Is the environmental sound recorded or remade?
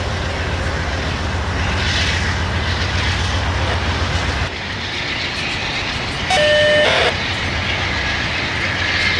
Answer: recorded